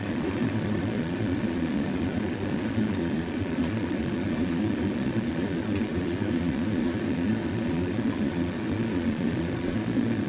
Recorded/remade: remade